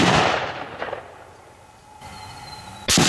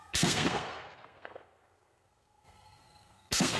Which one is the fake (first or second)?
second